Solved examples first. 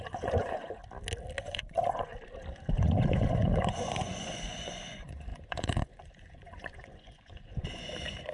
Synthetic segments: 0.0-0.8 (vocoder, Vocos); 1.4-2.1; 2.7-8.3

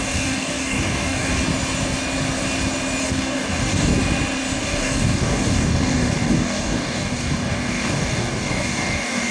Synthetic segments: 0.0-1.4 (codec, DAC); 3.0-3.9; 4.6-9.3

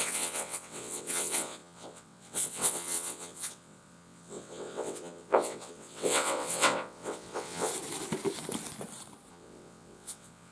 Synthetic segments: 0.0-7.7 (vocoder, WaveNeXt); 9.3-10.5

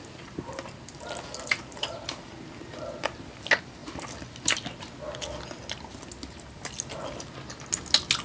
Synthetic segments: none

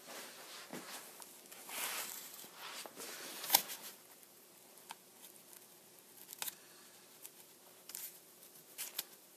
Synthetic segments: 0.0-0.7 (vocoder, BigVGAN v2); 2.0-5.1; 7.1-9.4